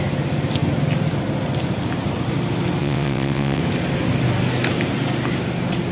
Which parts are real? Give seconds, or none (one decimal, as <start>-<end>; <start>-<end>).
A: 0.0-2.8; 3.6-5.9